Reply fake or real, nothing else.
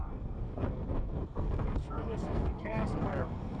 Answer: fake